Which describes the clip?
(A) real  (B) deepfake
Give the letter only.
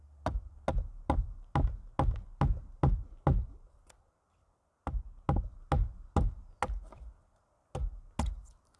A